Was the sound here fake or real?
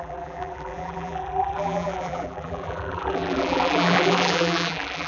fake